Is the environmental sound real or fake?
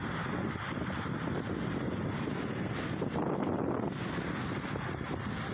real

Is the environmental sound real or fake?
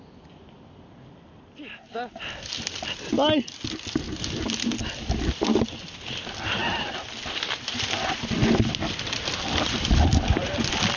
real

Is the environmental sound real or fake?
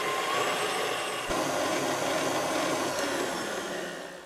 real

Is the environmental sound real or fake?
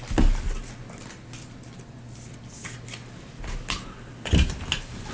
real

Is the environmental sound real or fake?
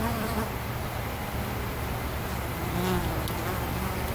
real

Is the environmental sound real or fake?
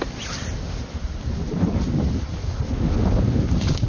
real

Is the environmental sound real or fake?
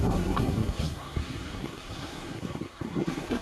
fake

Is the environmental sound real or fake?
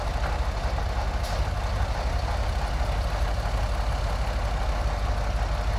real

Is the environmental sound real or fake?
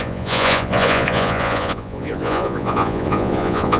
fake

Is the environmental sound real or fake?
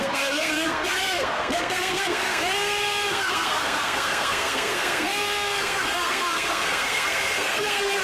fake